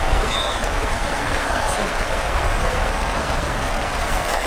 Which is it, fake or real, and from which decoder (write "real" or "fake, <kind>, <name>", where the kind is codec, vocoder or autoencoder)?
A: fake, codec, SNAC